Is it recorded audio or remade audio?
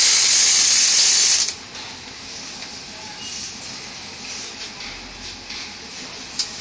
recorded